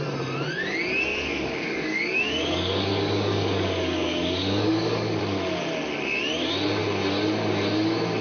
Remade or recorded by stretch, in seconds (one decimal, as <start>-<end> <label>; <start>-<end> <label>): 0.0-1.1 recorded; 1.1-5.2 remade; 5.2-8.2 recorded